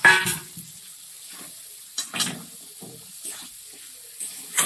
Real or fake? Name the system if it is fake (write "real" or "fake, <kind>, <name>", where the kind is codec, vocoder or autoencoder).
fake, vocoder, BigVGAN v2